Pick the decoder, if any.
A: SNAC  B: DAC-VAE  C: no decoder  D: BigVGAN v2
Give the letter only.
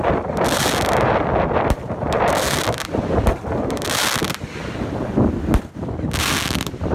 C